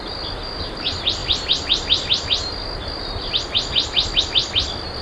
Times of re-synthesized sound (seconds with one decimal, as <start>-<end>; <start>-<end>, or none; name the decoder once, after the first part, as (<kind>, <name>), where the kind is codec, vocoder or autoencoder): none